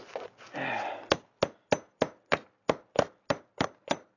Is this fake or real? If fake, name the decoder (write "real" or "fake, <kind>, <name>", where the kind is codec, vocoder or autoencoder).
real